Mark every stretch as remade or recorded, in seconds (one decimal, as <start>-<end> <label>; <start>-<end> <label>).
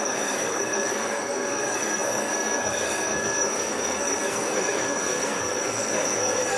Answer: 0.0-6.6 remade